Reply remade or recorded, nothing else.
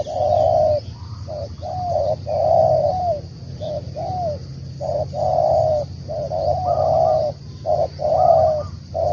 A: recorded